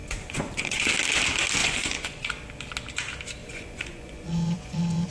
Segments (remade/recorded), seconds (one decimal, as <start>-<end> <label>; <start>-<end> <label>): 0.0-0.9 remade; 0.9-1.6 recorded; 1.6-2.3 remade; 2.3-3.4 recorded; 3.4-5.1 remade